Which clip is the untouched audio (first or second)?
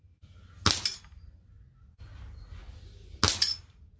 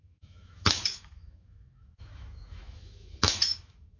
first